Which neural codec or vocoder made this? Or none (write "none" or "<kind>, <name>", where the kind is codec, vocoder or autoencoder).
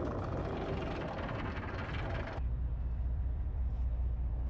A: none